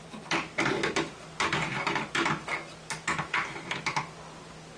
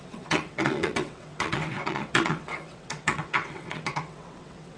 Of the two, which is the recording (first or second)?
first